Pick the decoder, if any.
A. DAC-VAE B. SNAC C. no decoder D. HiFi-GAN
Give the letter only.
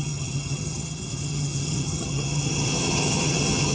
D